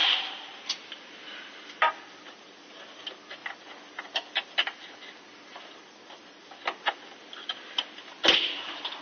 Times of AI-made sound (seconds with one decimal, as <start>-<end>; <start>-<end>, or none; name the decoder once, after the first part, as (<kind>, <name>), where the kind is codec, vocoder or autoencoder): none